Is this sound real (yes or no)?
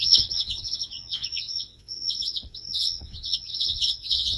no